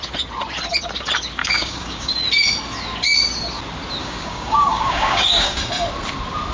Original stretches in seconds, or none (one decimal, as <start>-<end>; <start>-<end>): 0.0-1.4; 2.1-4.0; 5.6-6.5